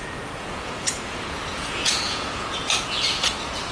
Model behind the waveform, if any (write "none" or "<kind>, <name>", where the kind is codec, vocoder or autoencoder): vocoder, Vocos